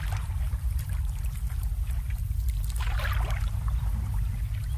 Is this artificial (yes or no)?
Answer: yes